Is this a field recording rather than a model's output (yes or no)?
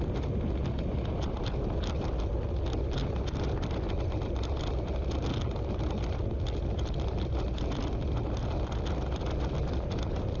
yes